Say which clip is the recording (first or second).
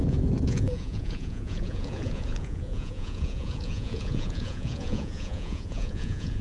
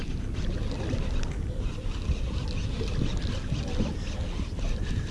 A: second